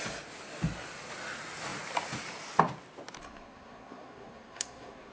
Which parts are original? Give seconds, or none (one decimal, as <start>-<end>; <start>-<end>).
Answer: 0.0-3.2